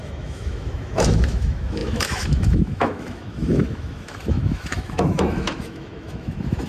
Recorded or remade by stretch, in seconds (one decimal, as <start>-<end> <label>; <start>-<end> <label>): 0.0-6.7 remade